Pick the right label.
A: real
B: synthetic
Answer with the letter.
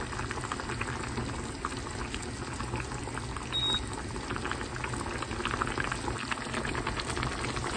A